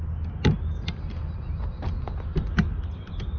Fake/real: real